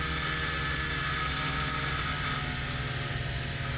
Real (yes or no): yes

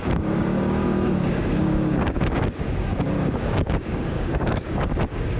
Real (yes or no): no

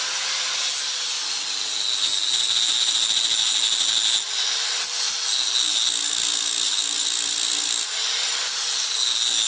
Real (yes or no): yes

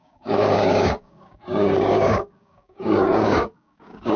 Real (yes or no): no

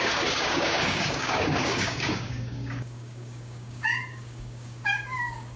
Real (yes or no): no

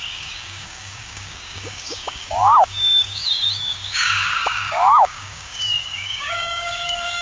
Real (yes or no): no